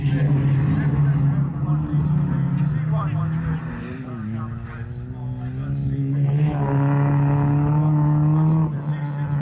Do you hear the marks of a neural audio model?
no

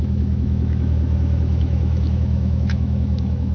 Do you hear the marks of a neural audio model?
yes